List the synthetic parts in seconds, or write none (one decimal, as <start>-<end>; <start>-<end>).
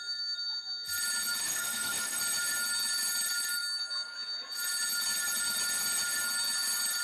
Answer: 1.4-2.2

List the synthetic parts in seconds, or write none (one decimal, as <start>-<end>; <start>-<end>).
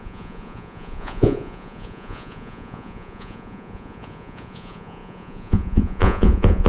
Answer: 0.0-6.7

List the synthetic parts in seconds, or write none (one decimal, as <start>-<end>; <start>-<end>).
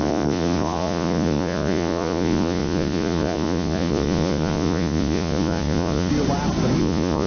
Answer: 0.0-6.1; 6.8-7.3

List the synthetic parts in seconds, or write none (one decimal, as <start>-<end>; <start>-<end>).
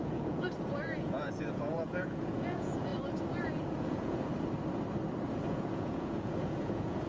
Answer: 0.0-2.9; 3.4-4.3; 5.5-7.1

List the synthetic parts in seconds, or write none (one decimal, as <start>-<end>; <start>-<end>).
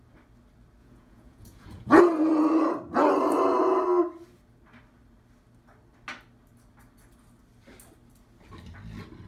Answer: 0.8-2.0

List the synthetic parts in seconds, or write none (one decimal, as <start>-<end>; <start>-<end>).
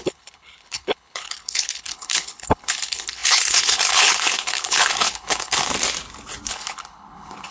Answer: 0.0-5.7; 6.5-7.5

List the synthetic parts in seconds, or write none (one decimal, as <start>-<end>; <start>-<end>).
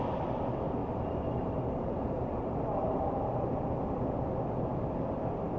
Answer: 0.8-3.6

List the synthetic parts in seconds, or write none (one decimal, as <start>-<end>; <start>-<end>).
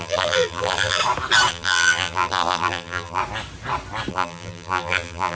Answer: 0.0-1.0; 1.5-3.2; 4.1-5.3